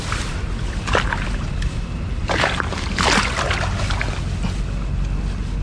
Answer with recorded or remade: recorded